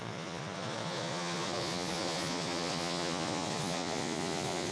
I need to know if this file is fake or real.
fake